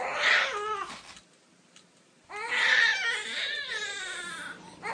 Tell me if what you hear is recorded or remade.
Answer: recorded